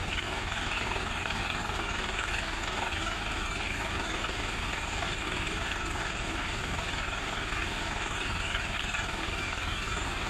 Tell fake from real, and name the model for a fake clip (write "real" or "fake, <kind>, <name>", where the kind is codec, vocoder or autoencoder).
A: fake, codec, DAC